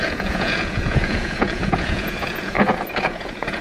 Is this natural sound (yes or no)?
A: no